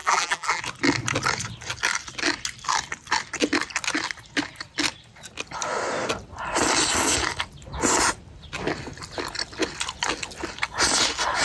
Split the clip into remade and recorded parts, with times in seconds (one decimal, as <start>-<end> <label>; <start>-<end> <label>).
0.0-0.6 remade; 0.6-11.4 recorded